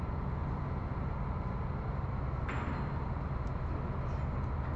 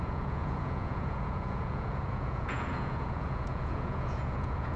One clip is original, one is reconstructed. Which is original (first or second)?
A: first